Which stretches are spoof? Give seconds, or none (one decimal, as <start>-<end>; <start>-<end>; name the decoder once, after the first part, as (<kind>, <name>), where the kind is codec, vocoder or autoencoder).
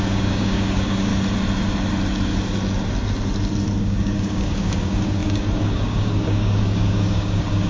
0.0-1.1 (codec, DAC); 3.8-7.7